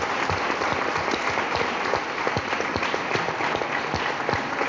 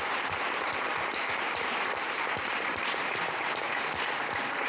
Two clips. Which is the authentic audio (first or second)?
first